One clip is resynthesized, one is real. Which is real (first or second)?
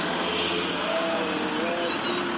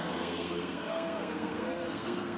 first